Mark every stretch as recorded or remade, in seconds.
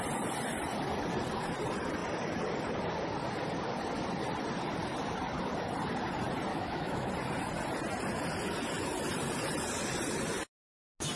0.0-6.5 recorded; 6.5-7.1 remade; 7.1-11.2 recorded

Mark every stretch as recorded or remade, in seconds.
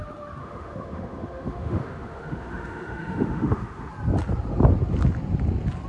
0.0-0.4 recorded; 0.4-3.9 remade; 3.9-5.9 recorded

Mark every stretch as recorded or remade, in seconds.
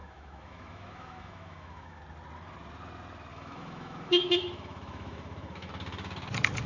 0.0-2.0 remade; 2.0-3.3 recorded; 3.3-5.7 remade; 5.7-6.7 recorded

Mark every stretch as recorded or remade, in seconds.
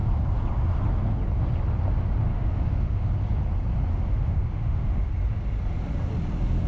0.0-2.3 recorded; 2.3-3.1 remade; 3.1-3.9 recorded; 3.9-5.1 remade; 5.1-6.7 recorded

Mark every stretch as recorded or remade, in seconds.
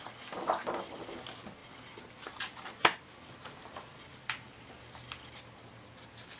0.0-6.4 recorded